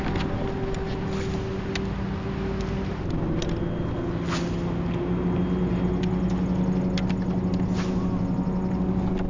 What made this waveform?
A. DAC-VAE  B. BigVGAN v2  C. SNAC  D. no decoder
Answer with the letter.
D